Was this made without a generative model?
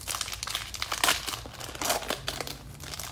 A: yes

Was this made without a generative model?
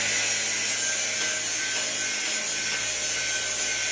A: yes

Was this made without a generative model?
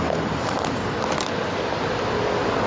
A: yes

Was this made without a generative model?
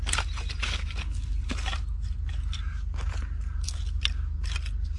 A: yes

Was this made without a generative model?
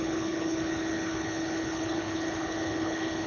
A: no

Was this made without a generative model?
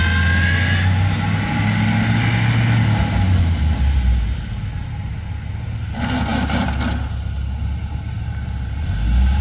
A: yes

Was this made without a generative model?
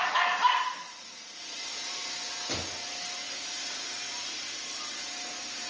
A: yes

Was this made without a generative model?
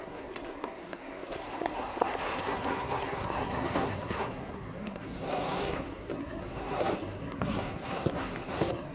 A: no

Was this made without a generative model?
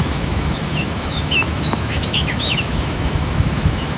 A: no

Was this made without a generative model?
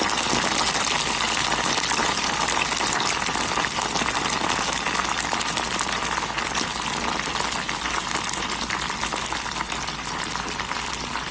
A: yes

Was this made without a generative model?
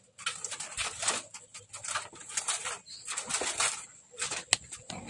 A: yes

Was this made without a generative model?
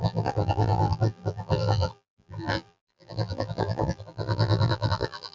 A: no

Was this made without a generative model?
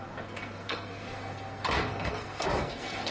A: no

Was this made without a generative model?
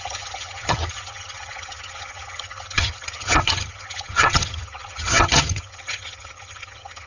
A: no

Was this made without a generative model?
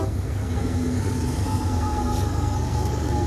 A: no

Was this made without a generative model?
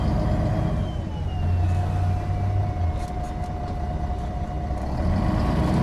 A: yes